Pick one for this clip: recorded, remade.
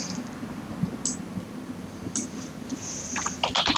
recorded